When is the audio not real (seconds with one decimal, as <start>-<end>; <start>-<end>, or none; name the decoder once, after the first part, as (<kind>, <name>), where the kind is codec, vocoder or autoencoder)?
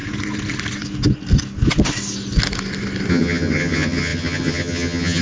3.1-5.2 (vocoder, HiFi-GAN)